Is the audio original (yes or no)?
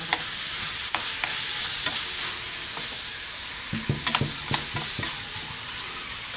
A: yes